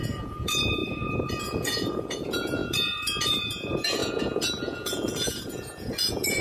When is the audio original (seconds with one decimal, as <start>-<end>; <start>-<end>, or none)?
none